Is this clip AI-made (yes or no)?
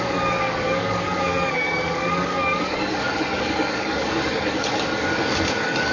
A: yes